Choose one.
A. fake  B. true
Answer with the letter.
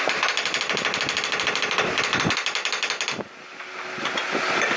B